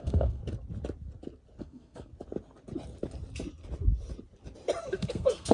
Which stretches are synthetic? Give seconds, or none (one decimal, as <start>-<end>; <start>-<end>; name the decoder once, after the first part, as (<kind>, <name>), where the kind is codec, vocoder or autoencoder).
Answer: 0.0-0.4 (codec, SNAC); 1.6-2.1; 4.8-5.5